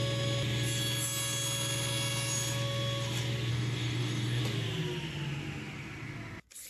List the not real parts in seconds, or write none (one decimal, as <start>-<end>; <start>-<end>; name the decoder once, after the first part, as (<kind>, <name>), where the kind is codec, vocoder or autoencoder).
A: 3.5-4.4 (codec, DAC)